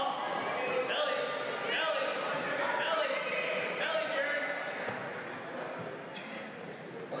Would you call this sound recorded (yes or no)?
yes